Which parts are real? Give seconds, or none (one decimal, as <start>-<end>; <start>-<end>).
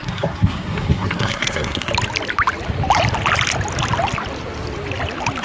1.9-5.4